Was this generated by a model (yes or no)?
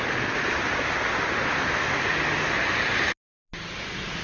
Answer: no